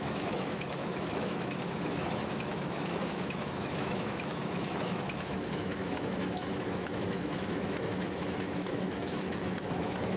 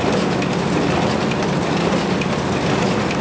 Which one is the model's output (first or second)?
first